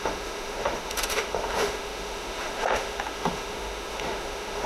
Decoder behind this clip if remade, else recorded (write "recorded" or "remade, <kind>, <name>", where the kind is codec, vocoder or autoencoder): remade, autoencoder, DAC-VAE